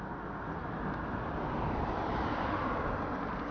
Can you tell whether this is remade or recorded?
recorded